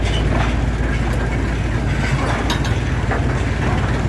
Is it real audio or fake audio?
real